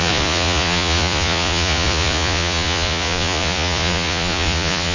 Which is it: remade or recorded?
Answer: remade